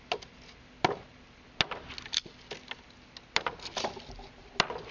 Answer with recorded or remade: recorded